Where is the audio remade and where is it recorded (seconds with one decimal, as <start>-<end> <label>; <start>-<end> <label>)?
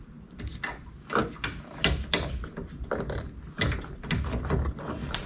0.0-5.3 recorded